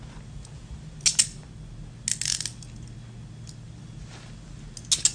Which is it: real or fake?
real